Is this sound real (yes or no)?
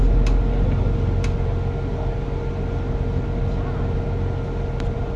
yes